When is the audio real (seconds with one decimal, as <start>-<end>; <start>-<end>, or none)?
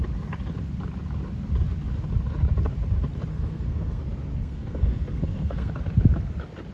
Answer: 0.0-3.3; 4.0-4.4; 5.7-6.7